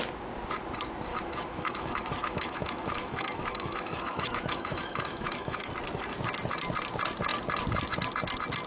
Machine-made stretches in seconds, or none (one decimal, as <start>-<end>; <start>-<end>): 1.1-5.7